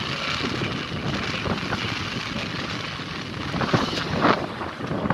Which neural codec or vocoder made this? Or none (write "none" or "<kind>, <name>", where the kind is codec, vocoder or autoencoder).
none